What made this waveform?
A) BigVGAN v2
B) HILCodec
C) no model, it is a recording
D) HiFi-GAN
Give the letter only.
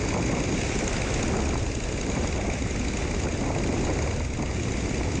C